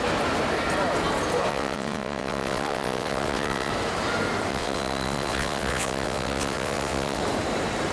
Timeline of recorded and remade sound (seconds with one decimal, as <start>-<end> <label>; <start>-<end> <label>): 0.0-1.5 recorded; 1.5-3.7 remade; 3.7-4.5 recorded; 4.5-7.2 remade; 7.2-7.9 recorded